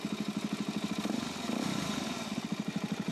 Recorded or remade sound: recorded